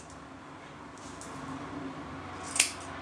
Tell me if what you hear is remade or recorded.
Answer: recorded